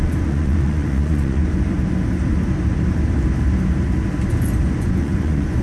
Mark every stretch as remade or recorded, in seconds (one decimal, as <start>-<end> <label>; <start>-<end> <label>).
0.0-1.4 remade; 1.4-4.8 recorded; 4.8-5.6 remade